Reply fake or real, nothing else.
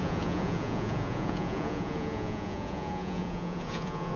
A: fake